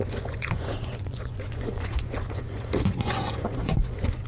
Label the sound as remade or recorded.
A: remade